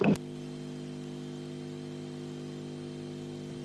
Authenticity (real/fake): real